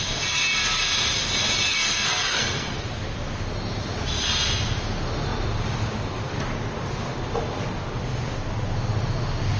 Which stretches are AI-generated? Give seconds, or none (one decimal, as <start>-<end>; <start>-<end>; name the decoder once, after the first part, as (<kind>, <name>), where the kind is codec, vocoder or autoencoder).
1.7-2.7 (codec, SNAC)